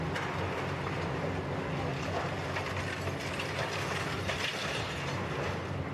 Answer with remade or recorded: recorded